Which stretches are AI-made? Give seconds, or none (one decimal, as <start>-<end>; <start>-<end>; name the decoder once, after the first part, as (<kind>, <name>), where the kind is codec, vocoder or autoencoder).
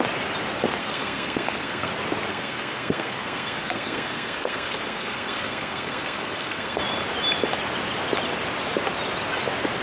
0.8-1.9 (codec, SNAC); 2.3-6.8